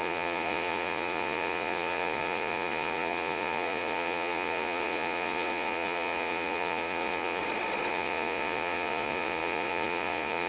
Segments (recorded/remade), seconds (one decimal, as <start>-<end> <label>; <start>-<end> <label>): 0.0-7.4 remade; 7.4-7.9 recorded; 7.9-10.5 remade